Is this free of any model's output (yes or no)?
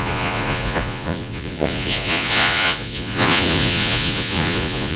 no